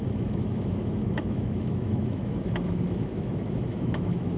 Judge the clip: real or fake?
fake